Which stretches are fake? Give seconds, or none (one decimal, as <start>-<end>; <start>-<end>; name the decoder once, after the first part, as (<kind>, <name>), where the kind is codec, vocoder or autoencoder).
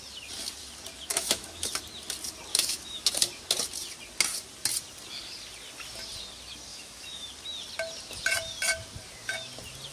1.1-1.7 (autoencoder, DAC-VAE); 2.5-3.1; 6.7-7.3